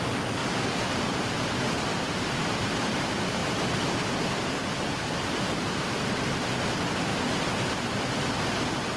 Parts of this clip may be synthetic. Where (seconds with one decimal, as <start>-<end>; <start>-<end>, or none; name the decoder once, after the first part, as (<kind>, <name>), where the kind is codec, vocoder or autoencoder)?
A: 0.4-1.4 (vocoder, BigVGAN v2); 1.9-2.7